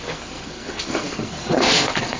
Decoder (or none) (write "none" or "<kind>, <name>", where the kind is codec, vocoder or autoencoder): codec, SNAC